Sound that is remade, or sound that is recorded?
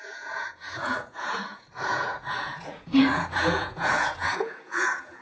remade